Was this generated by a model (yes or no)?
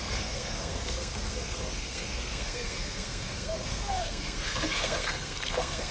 yes